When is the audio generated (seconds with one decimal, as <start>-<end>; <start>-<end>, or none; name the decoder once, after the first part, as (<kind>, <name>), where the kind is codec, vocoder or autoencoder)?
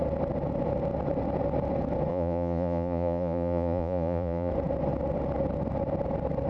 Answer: 2.1-4.5 (vocoder, Vocos)